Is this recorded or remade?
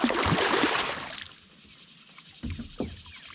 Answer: recorded